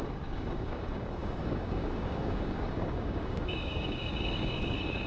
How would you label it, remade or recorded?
remade